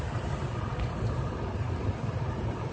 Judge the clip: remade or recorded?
recorded